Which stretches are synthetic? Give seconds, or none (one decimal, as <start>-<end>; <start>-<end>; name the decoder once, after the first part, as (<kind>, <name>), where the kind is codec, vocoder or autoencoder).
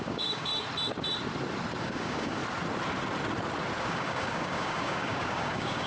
0.0-0.5 (codec, DAC); 1.8-2.4; 3.8-5.9